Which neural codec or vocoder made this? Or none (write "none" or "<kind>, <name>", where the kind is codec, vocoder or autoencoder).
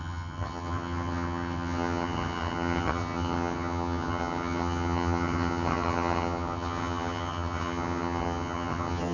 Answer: vocoder, HiFi-GAN